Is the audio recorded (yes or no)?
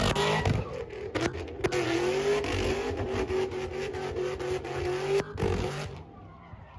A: yes